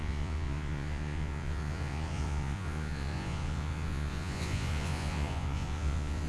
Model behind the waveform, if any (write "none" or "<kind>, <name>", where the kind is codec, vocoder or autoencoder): vocoder, Vocos